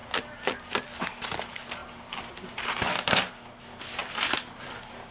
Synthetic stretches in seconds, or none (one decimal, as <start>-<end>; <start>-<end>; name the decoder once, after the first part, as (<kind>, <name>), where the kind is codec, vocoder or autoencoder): 1.8-3.2 (vocoder, BigVGAN v2); 4.0-4.5